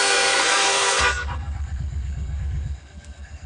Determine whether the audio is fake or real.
fake